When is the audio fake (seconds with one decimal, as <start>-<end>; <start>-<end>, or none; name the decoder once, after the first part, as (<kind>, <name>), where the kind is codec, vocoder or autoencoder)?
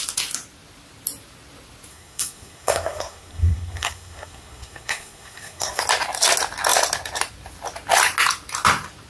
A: 1.9-5.8 (codec, SNAC)